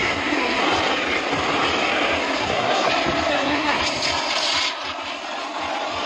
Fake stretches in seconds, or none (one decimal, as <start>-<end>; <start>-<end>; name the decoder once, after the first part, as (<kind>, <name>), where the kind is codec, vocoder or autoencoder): 0.0-0.6 (codec, SNAC); 2.4-2.9; 3.3-3.8